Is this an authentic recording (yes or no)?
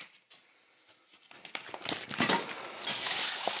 yes